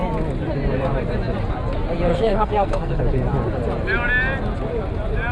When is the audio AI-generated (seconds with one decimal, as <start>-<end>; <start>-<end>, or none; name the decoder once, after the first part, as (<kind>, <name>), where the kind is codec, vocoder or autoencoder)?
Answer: 2.1-3.0 (codec, SNAC)